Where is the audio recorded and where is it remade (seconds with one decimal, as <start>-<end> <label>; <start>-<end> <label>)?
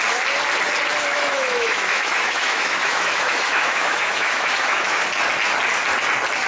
0.0-1.1 recorded; 1.1-5.0 remade; 5.0-6.5 recorded